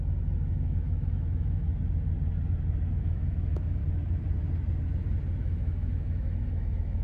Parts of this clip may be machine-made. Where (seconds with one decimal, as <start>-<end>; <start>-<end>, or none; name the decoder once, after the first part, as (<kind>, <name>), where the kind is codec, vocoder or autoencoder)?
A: 0.0-1.7 (autoencoder, DAC-VAE); 3.0-3.8; 5.4-7.0